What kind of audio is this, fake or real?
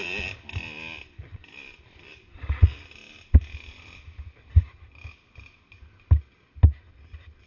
real